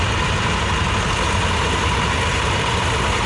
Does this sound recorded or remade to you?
recorded